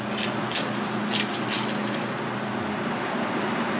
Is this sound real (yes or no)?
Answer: yes